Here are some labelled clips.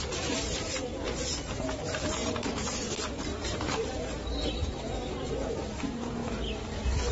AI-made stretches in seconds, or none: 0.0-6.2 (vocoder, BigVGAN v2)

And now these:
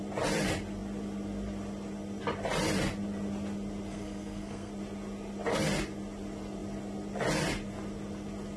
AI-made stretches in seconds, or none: 3.9-4.7 (codec, SNAC)

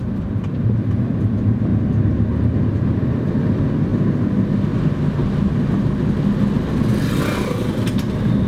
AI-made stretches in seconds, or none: 0.0-1.7 (vocoder, BigVGAN v2); 2.5-3.9; 7.2-8.5

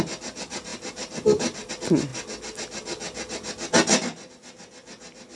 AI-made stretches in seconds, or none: 0.7-1.7 (vocoder, BigVGAN v2)